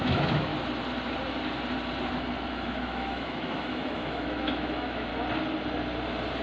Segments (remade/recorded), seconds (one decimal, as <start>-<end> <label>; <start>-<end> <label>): 0.0-0.5 remade; 0.5-2.5 recorded; 2.5-5.1 remade; 5.1-6.4 recorded